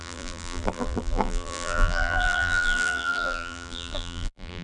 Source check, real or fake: fake